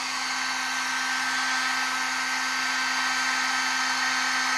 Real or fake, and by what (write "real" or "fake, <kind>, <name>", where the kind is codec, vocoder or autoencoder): real